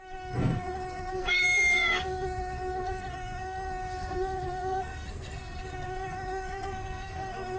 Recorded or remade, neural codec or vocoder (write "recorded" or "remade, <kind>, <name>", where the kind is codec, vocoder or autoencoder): remade, codec, SNAC